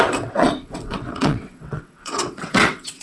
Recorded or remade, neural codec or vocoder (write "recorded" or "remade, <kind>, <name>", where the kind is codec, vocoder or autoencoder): remade, vocoder, WaveNeXt